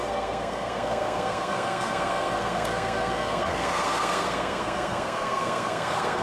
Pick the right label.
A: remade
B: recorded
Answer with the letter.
A